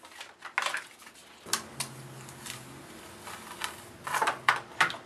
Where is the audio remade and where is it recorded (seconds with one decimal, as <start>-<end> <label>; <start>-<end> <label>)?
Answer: 0.0-5.1 recorded